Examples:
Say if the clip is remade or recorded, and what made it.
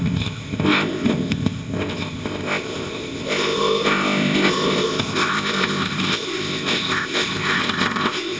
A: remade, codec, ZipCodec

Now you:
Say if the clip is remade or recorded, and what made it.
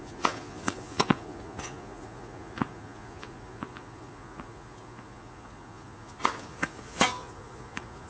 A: remade, vocoder, Vocos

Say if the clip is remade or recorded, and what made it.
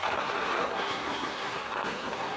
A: remade, codec, SNAC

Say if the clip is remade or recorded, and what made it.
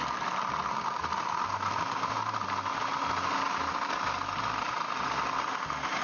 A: recorded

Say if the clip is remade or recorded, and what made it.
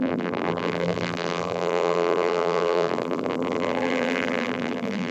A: remade, vocoder, BigVGAN v2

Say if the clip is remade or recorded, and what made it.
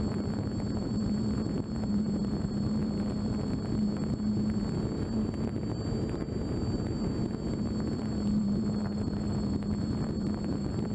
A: remade, vocoder, BigVGAN v2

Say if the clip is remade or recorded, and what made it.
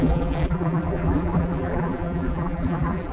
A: remade, vocoder, BigVGAN v2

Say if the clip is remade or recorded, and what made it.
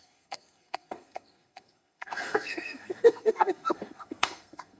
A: remade, codec, SNAC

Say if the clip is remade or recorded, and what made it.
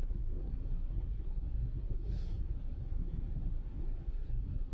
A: remade, codec, SNAC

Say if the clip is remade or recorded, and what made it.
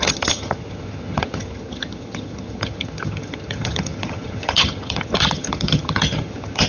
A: remade, vocoder, HiFi-GAN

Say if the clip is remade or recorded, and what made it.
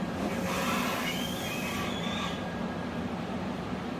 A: recorded